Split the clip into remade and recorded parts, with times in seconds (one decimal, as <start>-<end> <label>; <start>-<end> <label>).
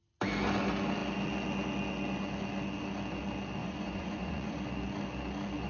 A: 0.0-3.6 recorded; 3.6-4.6 remade; 4.6-5.7 recorded